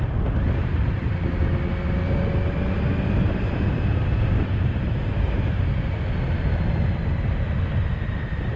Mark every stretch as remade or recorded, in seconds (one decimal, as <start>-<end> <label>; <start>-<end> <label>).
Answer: 0.0-0.6 recorded; 0.6-1.4 remade; 1.4-3.2 recorded; 3.2-6.0 remade; 6.0-8.6 recorded